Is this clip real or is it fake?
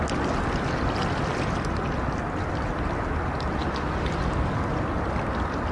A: real